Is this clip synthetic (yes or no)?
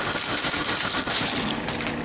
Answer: no